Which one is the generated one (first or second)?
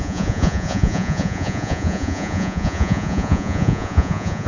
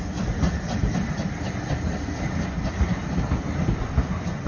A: first